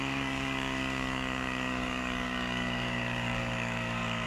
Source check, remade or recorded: remade